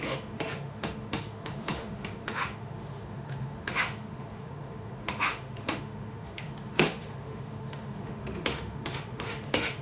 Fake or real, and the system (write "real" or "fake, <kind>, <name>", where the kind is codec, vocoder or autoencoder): fake, autoencoder, DAC-VAE